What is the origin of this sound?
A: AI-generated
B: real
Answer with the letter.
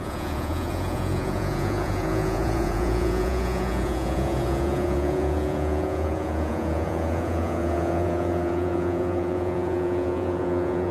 A